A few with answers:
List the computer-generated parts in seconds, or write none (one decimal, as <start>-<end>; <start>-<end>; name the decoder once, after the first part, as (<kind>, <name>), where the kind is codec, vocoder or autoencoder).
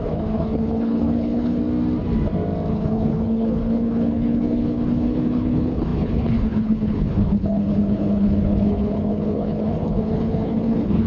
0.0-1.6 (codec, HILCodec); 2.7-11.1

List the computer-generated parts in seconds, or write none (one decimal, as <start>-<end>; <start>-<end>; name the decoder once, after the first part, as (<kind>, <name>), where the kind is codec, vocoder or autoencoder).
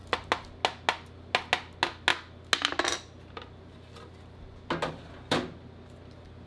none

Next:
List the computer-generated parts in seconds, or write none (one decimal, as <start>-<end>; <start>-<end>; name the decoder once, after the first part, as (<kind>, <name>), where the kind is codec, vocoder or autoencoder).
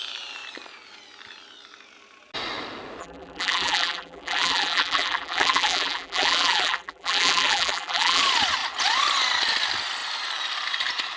3.0-8.2 (vocoder, BigVGAN v2)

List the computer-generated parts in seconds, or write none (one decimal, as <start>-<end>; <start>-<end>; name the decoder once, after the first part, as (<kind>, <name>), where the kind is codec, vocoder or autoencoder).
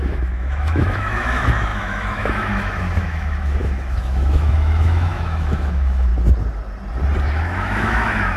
0.0-6.1 (autoencoder, DAC-VAE); 7.4-8.4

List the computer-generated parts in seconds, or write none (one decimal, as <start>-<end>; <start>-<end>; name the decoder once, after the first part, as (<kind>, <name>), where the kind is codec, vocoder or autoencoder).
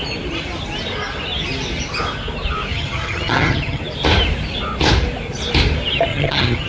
2.7-3.8 (vocoder, HiFi-GAN); 6.1-6.7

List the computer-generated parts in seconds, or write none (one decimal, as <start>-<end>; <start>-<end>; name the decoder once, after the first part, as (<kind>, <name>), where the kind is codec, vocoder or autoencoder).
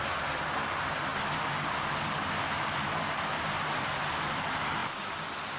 none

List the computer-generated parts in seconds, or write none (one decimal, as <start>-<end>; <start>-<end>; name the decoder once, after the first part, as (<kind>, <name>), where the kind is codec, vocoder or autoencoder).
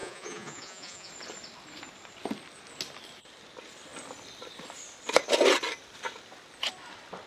0.0-1.1 (vocoder, Vocos)